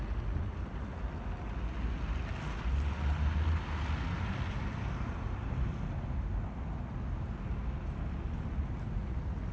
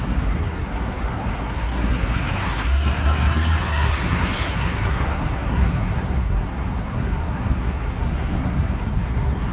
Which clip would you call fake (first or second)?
second